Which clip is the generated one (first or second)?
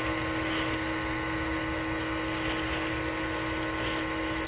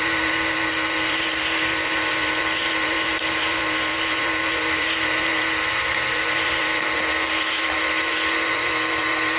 second